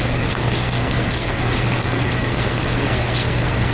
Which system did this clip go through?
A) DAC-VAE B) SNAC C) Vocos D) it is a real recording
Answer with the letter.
B